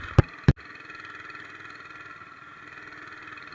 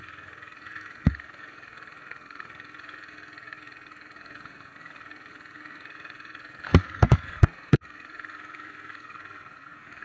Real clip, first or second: first